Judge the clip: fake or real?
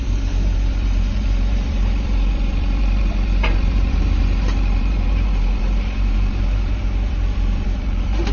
fake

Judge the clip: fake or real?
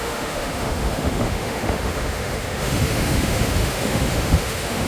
fake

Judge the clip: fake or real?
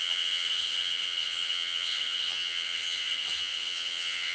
fake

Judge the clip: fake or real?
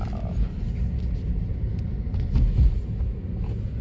real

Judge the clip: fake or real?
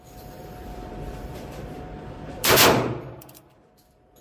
fake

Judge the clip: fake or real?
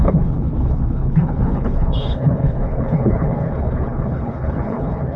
fake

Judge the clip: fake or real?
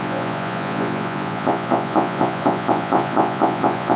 fake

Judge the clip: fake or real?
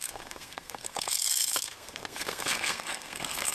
fake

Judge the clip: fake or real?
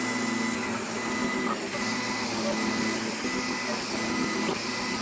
real